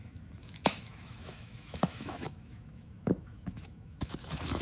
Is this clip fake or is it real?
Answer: fake